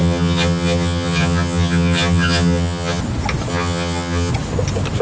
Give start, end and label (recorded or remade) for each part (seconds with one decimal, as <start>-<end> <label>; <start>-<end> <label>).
0.0-3.0 remade; 3.0-3.5 recorded; 3.5-4.3 remade; 4.3-5.0 recorded